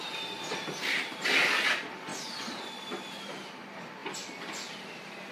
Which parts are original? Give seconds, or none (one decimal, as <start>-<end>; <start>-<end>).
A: 0.0-1.1; 2.1-3.0